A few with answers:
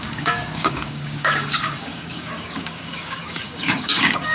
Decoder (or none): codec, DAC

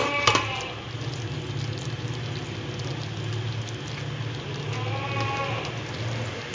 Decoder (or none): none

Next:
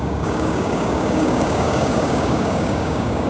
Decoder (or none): codec, DAC